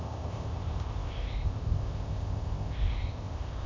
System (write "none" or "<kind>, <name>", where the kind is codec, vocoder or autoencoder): codec, ZipCodec